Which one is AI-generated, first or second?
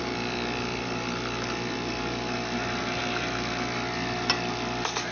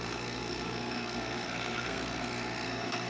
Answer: second